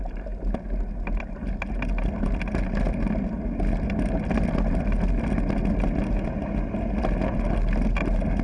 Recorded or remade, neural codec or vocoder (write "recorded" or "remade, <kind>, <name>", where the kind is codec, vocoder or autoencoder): recorded